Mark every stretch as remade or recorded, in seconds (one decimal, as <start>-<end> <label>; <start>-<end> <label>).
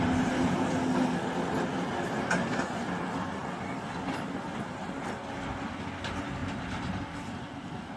0.0-6.4 recorded; 6.4-8.0 remade